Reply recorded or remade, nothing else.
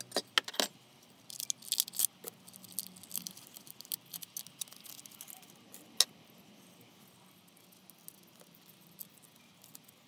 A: recorded